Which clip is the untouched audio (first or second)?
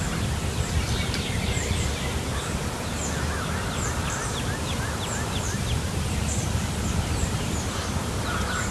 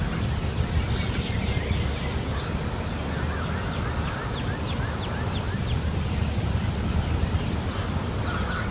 second